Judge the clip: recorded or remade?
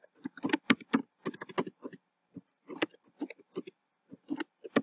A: recorded